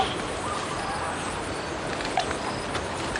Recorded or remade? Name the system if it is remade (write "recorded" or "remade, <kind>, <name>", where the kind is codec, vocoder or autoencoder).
recorded